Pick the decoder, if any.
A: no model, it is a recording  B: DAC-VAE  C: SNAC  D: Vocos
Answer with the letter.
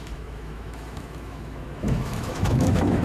B